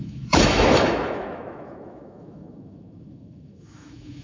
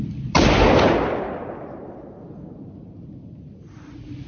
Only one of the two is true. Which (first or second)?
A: second